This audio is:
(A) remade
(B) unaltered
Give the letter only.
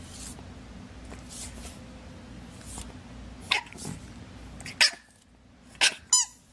B